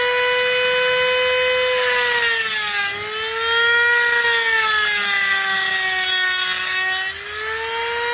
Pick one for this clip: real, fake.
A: real